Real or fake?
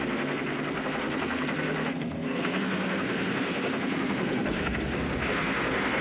fake